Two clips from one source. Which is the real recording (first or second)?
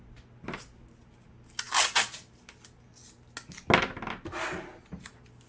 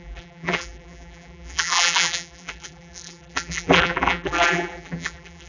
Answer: first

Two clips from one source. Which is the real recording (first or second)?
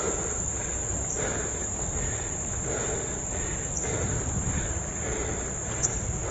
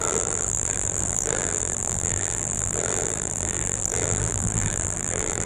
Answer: first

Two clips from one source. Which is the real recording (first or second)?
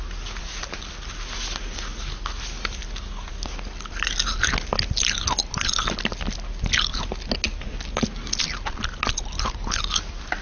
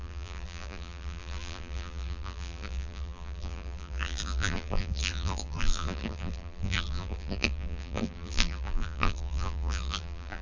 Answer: first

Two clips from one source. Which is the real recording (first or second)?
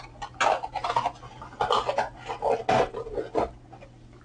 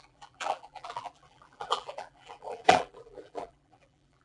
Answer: first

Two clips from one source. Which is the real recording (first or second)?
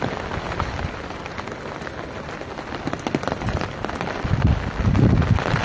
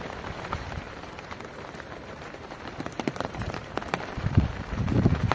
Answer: first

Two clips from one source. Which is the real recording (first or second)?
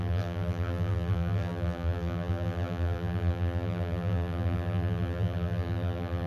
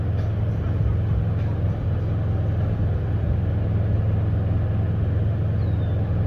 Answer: second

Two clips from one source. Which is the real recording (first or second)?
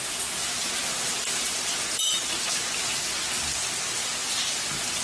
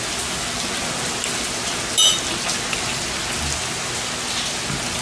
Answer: second